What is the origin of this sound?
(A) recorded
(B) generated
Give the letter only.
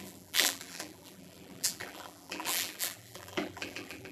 B